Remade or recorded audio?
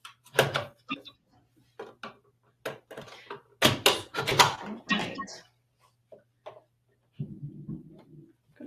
recorded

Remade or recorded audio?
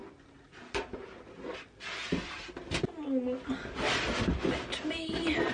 recorded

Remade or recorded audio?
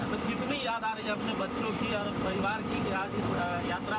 recorded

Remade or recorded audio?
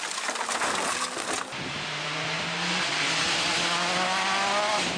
recorded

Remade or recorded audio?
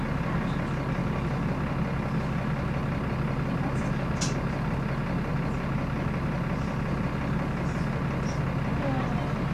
recorded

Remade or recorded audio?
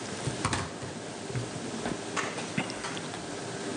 recorded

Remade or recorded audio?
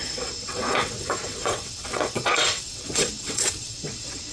remade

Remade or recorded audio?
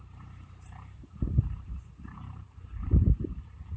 remade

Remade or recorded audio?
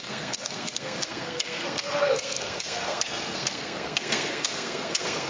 remade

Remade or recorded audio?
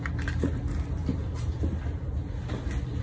recorded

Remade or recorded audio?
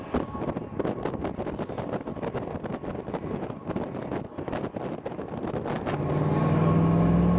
recorded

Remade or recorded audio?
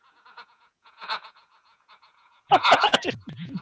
remade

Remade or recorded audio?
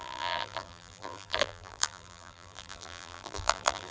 remade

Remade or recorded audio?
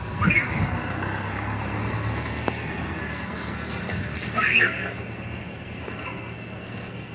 remade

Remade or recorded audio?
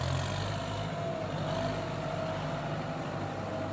recorded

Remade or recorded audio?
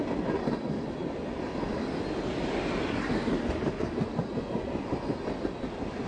recorded